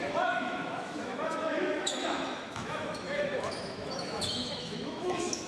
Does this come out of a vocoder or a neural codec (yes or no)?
yes